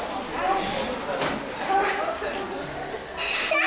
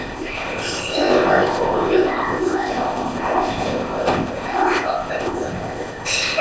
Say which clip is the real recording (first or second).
first